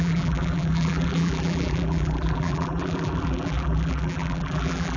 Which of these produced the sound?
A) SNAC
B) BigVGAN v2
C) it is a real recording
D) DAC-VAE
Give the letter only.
B